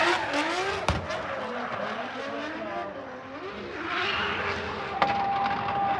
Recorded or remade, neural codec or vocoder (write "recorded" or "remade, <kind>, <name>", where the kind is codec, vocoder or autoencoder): recorded